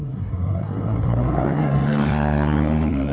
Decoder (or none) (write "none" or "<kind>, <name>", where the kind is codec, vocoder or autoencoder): codec, SNAC